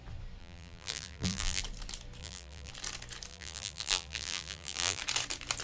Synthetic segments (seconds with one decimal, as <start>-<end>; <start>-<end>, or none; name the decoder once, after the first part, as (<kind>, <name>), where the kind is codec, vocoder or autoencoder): 0.4-1.6 (vocoder, BigVGAN v2); 2.2-2.7; 3.3-5.0